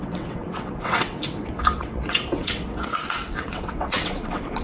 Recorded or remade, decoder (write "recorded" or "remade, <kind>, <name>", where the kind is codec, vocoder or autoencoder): remade, vocoder, WaveNeXt